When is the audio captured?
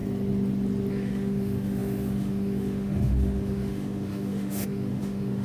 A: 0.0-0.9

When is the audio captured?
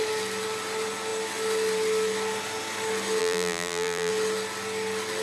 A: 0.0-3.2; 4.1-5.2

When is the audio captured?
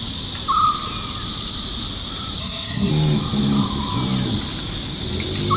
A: 0.0-2.4; 2.9-5.6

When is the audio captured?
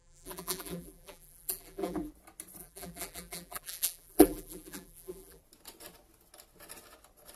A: 2.1-2.6; 5.4-7.4